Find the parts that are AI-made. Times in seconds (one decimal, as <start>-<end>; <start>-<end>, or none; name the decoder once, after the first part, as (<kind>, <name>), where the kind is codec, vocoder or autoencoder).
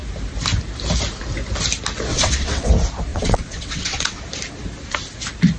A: 2.1-2.7 (vocoder, WaveNeXt); 3.1-4.2